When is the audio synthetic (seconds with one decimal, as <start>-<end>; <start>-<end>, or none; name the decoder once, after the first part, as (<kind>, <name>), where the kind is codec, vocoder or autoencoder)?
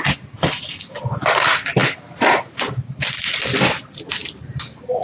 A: 1.8-3.0 (vocoder, BigVGAN v2); 4.2-5.0